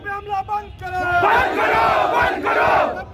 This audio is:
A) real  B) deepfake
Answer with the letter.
A